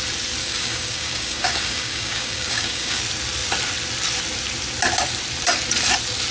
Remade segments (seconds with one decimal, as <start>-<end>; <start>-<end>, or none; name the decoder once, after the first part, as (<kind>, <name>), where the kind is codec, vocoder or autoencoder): 0.4-3.0 (codec, DAC)